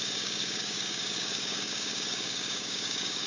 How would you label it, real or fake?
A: fake